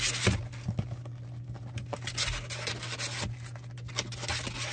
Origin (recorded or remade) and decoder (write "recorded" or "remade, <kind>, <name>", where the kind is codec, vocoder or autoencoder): recorded